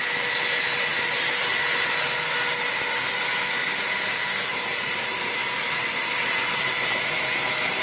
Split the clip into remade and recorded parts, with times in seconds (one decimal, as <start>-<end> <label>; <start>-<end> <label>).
0.0-7.8 recorded